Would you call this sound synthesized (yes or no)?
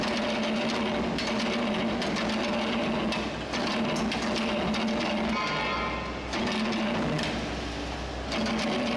no